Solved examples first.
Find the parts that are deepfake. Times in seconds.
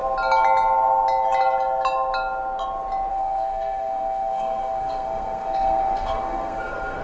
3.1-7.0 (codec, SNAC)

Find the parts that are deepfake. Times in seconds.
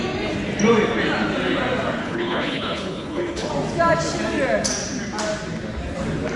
2.0-3.5 (codec, HILCodec)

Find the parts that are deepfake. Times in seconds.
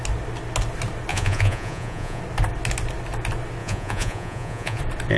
1.1-2.2 (vocoder, Vocos); 3.6-4.8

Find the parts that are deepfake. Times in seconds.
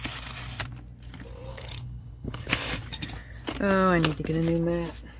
1.5-2.7 (codec, HILCodec)